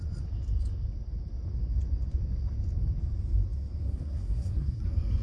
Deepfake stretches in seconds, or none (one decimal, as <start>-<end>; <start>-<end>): 3.8-4.8